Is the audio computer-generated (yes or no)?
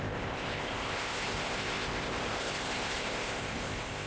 yes